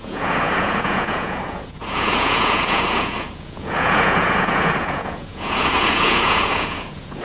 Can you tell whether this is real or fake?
fake